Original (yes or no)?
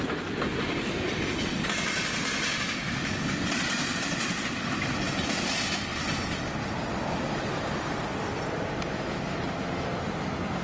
yes